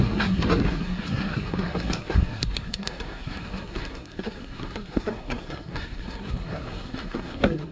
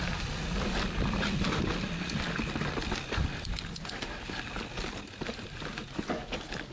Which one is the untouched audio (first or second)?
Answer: second